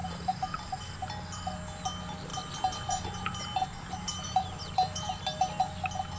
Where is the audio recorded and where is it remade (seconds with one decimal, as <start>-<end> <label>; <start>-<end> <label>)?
0.0-0.8 remade; 0.8-4.1 recorded; 4.1-5.0 remade; 5.0-6.2 recorded